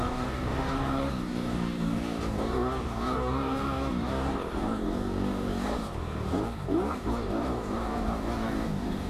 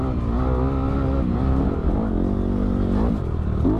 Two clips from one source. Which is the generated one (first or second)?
first